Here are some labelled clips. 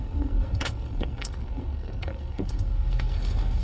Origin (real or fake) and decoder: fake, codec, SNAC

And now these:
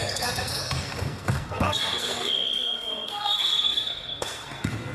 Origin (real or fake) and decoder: fake, codec, SNAC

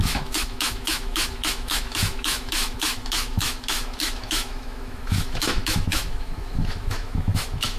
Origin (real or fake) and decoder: fake, autoencoder, DAC-VAE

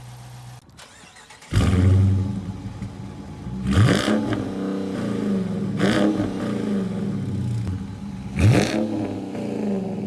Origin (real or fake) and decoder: real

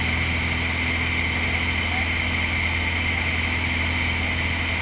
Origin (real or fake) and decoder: real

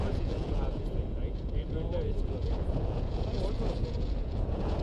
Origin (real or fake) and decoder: fake, vocoder, Vocos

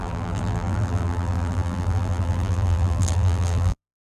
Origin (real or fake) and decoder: fake, vocoder, BigVGAN v2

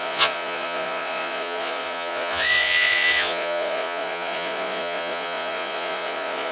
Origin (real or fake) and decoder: fake, vocoder, Vocos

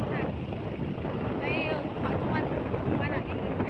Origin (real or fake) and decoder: real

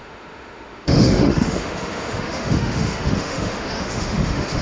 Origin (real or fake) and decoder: fake, autoencoder, DAC-VAE